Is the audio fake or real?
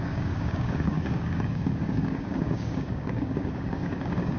fake